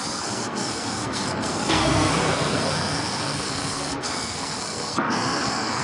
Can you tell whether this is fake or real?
fake